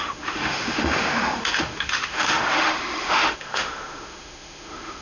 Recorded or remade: remade